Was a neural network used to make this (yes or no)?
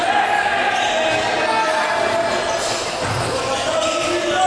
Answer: no